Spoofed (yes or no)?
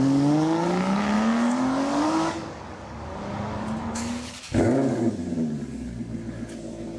yes